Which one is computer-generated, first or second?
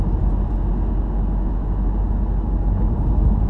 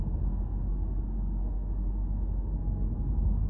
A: second